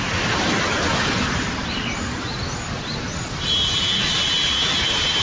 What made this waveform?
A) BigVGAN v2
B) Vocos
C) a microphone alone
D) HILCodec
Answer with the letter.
C